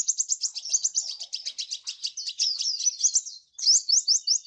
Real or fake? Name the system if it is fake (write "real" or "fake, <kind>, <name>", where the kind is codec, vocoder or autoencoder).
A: real